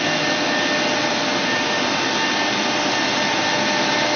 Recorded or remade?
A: recorded